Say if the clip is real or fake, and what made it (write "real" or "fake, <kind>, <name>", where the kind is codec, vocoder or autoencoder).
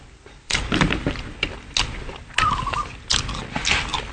real